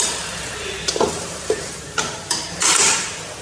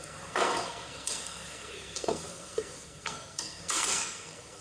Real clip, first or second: first